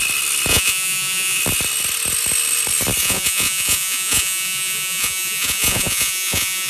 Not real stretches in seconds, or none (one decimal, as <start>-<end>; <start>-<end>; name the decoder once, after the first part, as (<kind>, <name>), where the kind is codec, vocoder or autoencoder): 0.5-1.4 (vocoder, Vocos); 3.0-6.7